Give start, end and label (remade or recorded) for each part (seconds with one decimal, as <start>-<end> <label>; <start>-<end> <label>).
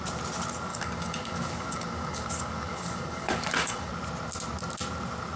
0.0-0.7 recorded; 0.7-3.9 remade; 3.9-5.4 recorded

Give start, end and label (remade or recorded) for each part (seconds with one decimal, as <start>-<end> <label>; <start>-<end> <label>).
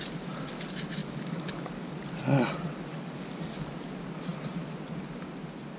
0.0-1.0 recorded; 1.0-1.9 remade; 1.9-2.9 recorded; 2.9-3.7 remade; 3.7-5.8 recorded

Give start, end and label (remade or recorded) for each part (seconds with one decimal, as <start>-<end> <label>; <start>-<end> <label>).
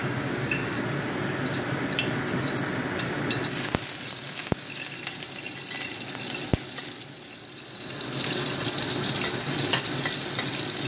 0.0-0.8 remade; 0.8-4.4 recorded; 4.4-4.9 remade; 4.9-10.9 recorded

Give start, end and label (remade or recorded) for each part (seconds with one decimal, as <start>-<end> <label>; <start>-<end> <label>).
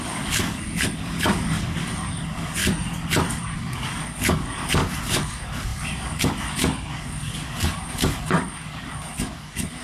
0.0-2.6 remade; 2.6-3.3 recorded; 3.3-9.8 remade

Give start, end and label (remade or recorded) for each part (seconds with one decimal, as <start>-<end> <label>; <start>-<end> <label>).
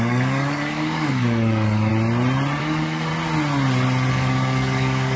0.0-1.9 remade; 1.9-2.6 recorded; 2.6-3.1 remade; 3.1-4.1 recorded; 4.1-5.2 remade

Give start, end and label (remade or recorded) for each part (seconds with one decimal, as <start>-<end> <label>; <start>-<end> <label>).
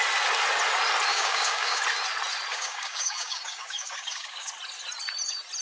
0.0-1.1 recorded; 1.1-1.8 remade; 1.8-2.5 recorded; 2.5-4.5 remade; 4.5-5.6 recorded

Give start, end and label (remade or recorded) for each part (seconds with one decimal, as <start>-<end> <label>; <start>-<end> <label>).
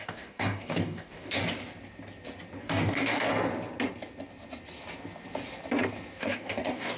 0.0-1.4 remade; 1.4-2.6 recorded; 2.6-3.3 remade; 3.3-6.2 recorded; 6.2-7.0 remade